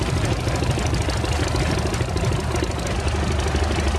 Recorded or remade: recorded